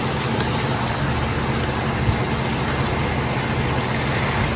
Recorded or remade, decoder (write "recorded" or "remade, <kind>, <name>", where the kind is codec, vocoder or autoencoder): recorded